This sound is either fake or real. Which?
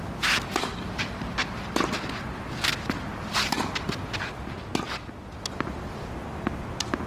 real